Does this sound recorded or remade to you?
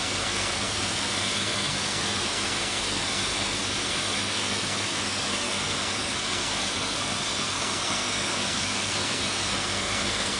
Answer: remade